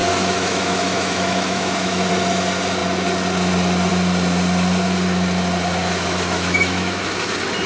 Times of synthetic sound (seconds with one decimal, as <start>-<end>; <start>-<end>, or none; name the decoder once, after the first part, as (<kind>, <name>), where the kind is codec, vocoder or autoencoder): 0.0-2.1 (autoencoder, DAC-VAE); 5.8-7.3